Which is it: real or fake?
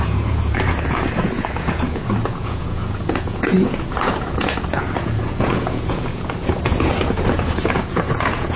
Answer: fake